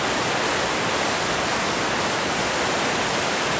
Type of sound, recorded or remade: recorded